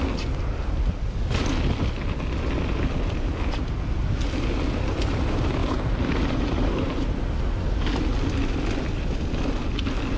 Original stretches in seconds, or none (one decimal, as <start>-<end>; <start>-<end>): 0.0-5.6; 7.2-10.2